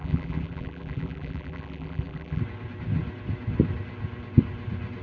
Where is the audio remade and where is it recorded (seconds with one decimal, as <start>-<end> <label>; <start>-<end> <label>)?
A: 0.0-2.4 remade; 2.4-5.0 recorded